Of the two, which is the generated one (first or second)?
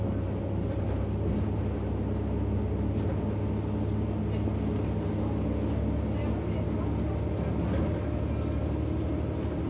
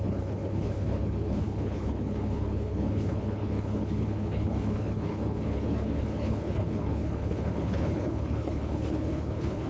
second